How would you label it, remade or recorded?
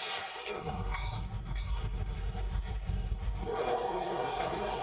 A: remade